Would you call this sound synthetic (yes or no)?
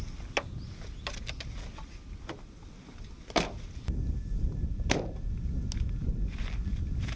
no